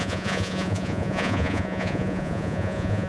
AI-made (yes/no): yes